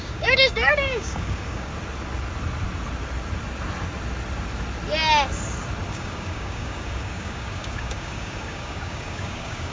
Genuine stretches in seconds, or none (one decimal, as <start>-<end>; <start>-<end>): 1.7-5.9